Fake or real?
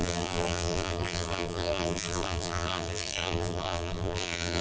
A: fake